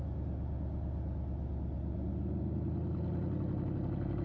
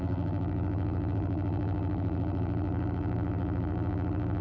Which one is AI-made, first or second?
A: second